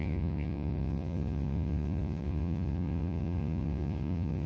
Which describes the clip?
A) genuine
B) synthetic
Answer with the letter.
B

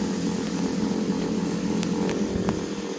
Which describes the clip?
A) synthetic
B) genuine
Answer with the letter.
B